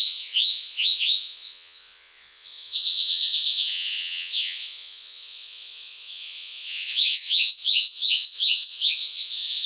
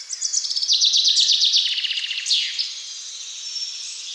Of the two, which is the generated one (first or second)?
first